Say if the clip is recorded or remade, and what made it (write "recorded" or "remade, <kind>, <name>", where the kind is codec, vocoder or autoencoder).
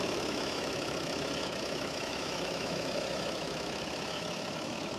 remade, autoencoder, DAC-VAE